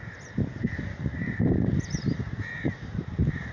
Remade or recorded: remade